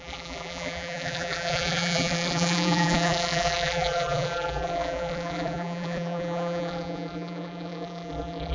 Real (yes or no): no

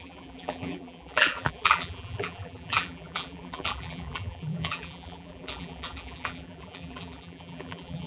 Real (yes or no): no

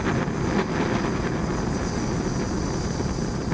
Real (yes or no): yes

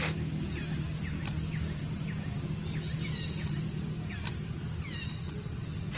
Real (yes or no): yes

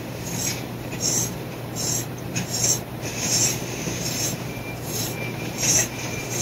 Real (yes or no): no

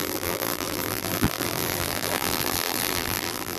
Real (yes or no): no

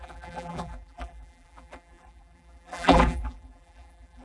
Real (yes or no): no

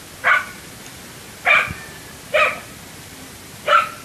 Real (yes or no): no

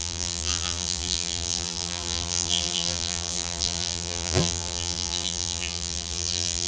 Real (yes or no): no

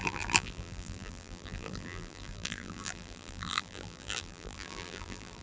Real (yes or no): no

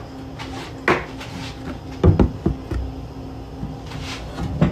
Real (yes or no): yes